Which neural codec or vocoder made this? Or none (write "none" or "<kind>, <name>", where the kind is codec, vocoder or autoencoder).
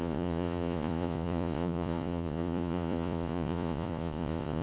vocoder, Vocos